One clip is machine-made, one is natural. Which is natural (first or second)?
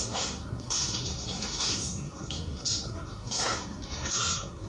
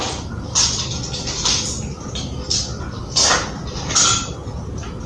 second